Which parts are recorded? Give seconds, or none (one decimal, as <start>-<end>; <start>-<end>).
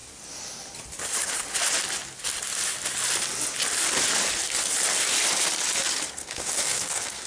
0.0-6.2